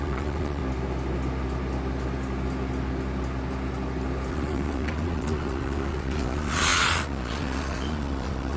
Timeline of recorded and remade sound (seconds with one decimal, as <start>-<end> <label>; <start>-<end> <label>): 0.0-0.6 remade; 0.6-4.3 recorded; 4.3-8.6 remade